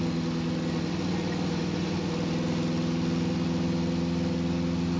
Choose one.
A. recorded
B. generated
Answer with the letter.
A